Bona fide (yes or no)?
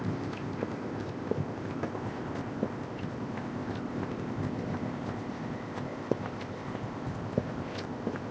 no